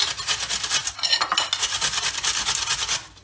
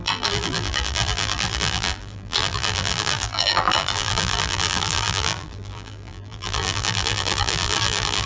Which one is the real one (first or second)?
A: first